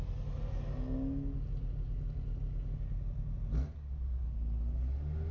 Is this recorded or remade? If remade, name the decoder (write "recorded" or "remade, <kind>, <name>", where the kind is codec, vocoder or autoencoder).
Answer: recorded